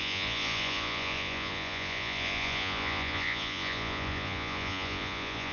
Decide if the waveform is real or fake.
fake